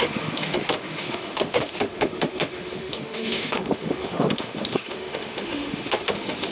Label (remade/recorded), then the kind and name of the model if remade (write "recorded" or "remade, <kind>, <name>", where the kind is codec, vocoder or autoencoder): remade, autoencoder, DAC-VAE